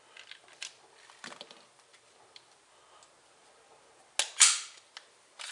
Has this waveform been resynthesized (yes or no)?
no